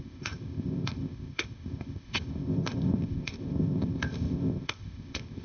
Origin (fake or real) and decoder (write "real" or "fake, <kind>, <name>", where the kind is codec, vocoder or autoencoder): fake, codec, ZipCodec